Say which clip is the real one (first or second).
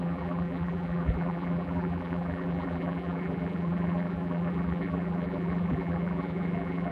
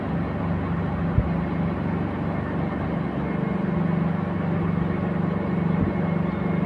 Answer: second